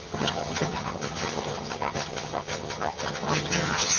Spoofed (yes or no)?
yes